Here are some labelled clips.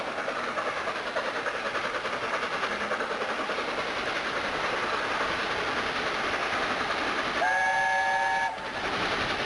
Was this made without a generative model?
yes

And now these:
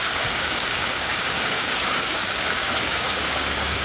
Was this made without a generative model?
no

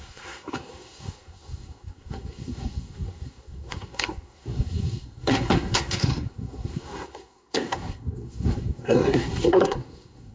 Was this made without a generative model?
no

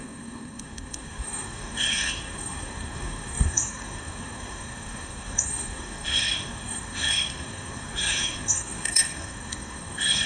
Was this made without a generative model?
no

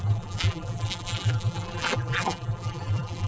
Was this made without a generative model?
no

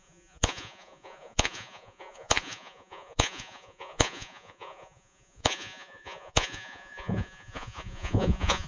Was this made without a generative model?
no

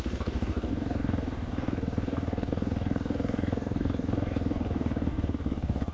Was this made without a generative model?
no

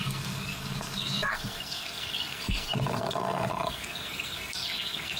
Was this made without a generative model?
no